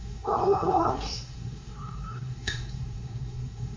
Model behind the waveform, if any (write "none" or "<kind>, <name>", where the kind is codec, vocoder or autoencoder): codec, SNAC